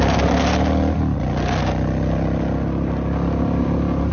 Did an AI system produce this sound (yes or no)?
no